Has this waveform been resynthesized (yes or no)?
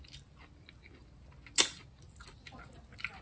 no